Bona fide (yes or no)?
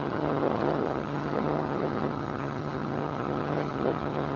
no